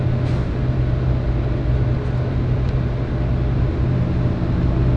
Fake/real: real